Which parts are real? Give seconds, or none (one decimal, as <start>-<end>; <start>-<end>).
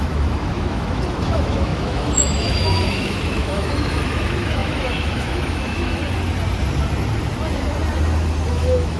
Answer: 6.0-8.5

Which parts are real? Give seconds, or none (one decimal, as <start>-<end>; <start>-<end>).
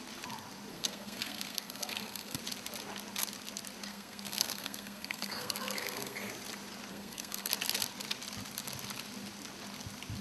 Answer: 0.0-0.7; 2.4-3.9; 6.3-6.9; 7.5-10.2